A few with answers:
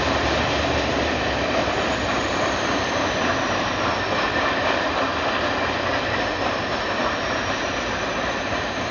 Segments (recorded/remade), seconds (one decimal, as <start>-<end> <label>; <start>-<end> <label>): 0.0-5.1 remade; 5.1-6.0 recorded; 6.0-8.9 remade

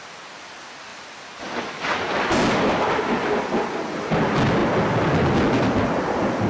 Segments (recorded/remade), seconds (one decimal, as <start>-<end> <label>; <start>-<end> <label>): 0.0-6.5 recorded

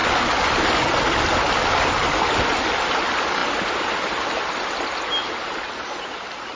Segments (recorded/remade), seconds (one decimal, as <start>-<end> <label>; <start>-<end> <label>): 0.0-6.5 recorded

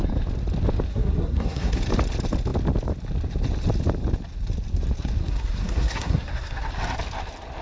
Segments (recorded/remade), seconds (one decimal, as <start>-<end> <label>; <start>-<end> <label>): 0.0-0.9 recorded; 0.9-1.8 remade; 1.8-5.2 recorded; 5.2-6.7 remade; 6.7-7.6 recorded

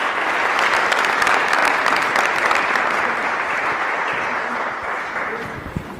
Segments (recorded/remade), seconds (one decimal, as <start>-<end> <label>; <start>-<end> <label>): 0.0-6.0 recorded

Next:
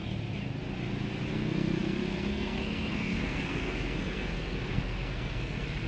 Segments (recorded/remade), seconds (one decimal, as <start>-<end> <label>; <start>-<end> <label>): 0.0-1.3 recorded; 1.3-5.9 remade